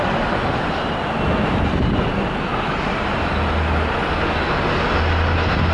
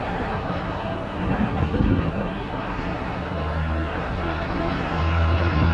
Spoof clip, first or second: second